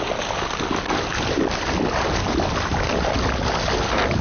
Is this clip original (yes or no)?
yes